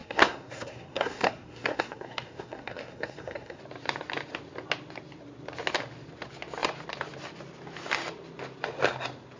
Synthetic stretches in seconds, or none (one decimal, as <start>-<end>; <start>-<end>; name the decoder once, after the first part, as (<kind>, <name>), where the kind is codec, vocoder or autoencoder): 0.0-3.6 (codec, SNAC)